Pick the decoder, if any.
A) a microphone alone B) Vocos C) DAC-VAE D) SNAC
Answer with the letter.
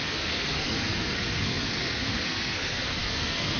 D